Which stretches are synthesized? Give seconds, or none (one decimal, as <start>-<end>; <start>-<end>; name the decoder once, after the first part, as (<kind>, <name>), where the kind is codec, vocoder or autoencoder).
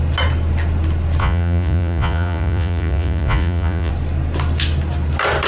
1.2-3.9 (vocoder, Vocos)